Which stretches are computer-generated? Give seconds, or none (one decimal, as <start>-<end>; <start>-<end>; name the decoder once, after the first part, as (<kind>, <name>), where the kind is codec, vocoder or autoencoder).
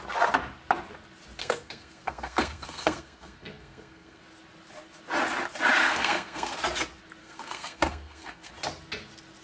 1.4-4.2 (codec, SNAC); 5.8-6.6; 7.2-8.5